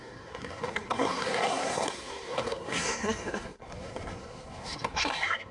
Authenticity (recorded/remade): remade